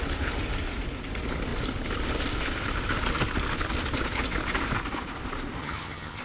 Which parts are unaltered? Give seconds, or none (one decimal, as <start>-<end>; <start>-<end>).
0.0-5.6